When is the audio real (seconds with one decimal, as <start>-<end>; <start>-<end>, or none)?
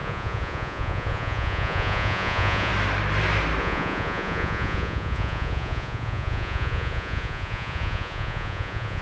2.7-3.6